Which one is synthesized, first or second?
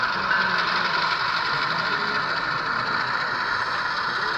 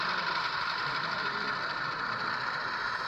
second